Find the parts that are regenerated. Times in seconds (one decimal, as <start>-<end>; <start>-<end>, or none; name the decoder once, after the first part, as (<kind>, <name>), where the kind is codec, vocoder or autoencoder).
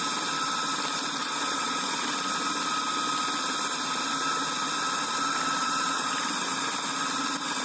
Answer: 1.2-2.0 (vocoder, Vocos); 5.6-6.1